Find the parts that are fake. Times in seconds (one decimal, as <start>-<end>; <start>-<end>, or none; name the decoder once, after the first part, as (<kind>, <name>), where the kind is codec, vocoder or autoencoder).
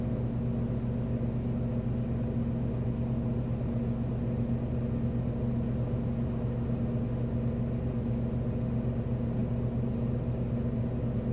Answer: 9.4-10.8 (vocoder, BigVGAN v2)